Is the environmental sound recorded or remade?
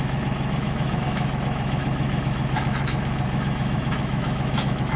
remade